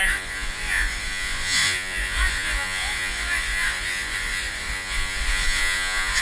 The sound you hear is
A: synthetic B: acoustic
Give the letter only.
A